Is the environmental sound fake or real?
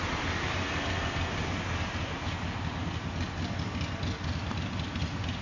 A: real